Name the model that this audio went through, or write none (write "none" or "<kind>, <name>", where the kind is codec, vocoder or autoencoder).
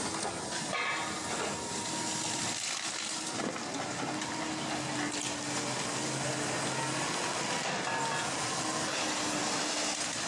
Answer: none